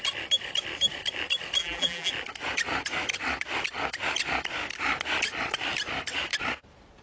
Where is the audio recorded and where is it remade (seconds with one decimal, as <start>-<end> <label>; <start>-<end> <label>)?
0.0-1.6 recorded; 1.6-2.1 remade; 2.1-7.0 recorded